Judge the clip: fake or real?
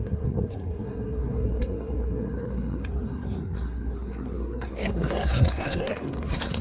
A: fake